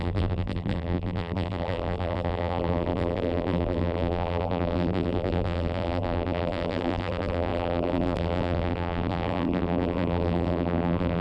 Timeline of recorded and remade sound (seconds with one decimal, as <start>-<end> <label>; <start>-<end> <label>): 0.0-11.2 remade